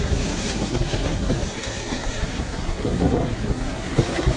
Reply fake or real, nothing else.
fake